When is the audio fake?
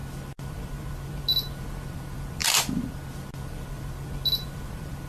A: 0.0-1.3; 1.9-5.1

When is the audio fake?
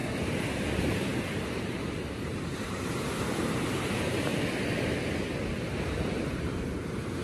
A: 0.8-4.3; 5.5-7.2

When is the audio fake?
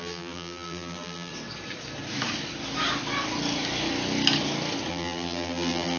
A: 0.0-1.3; 4.9-6.0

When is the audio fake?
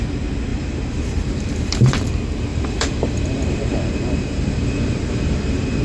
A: 0.5-2.1; 2.5-5.8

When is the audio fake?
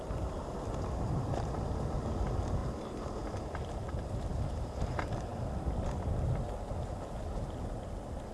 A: none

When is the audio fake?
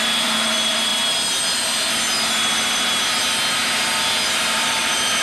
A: 0.0-0.9; 4.0-5.2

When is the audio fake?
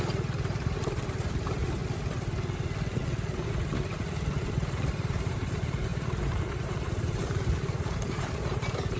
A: 0.0-1.8; 4.3-9.0